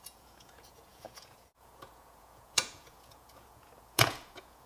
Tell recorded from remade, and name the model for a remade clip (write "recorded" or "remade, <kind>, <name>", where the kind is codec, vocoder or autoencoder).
remade, vocoder, Vocos